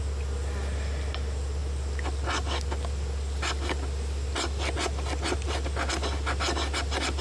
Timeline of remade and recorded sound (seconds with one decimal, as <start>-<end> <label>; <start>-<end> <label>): 0.0-7.2 recorded